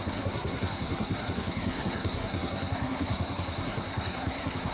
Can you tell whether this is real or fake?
fake